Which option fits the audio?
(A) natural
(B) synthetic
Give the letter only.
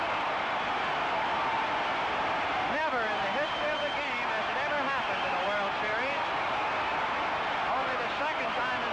A